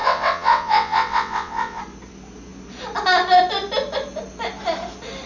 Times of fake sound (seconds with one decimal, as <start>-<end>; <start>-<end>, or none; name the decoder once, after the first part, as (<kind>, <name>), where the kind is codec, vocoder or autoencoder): 0.0-1.8 (vocoder, WaveNeXt)